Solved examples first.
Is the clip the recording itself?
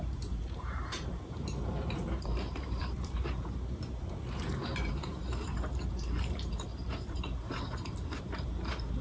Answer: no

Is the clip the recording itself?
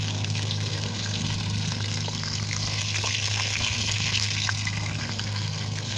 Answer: no